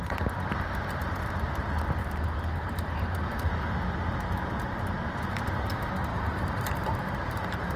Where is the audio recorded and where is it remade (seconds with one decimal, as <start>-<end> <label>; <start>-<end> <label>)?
0.0-2.0 recorded; 2.0-3.5 remade; 3.5-6.1 recorded; 6.1-7.8 remade